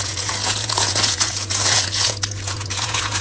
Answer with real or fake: fake